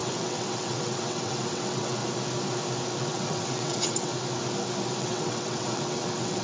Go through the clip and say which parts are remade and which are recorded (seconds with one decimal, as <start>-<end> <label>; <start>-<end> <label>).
0.0-2.0 remade; 2.0-3.0 recorded; 3.0-4.1 remade; 4.1-5.0 recorded; 5.0-6.4 remade